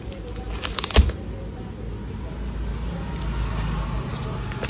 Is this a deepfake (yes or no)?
no